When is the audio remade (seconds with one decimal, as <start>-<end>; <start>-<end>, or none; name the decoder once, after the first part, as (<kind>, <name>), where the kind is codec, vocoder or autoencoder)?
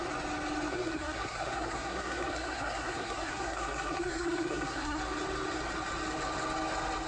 0.7-5.0 (codec, SNAC)